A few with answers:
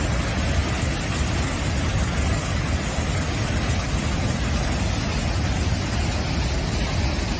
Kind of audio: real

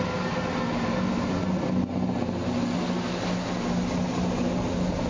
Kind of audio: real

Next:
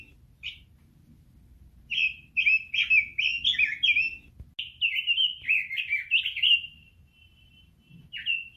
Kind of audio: real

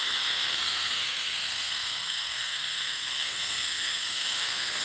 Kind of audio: fake